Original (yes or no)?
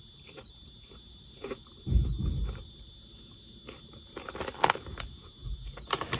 yes